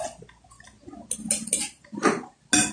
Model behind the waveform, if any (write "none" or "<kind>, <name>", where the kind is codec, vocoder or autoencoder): none